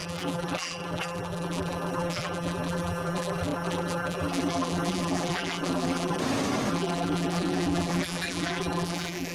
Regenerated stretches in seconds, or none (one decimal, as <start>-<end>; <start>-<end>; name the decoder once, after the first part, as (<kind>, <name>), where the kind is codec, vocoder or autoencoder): 0.0-6.2 (vocoder, BigVGAN v2); 6.7-9.3